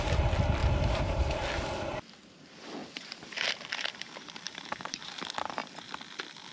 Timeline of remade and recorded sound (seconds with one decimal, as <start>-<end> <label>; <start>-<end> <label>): 0.0-0.6 recorded; 0.6-1.2 remade; 1.2-2.8 recorded; 2.8-5.1 remade; 5.1-6.5 recorded